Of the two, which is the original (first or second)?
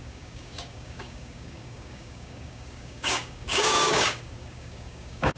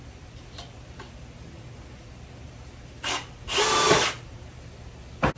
second